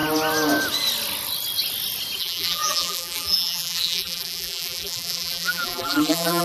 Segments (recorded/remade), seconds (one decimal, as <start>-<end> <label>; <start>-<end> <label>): 0.0-2.2 recorded; 2.2-6.4 remade